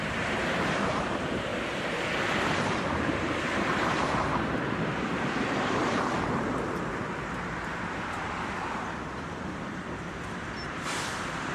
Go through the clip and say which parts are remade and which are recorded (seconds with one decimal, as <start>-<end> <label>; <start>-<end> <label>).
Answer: 0.0-11.5 remade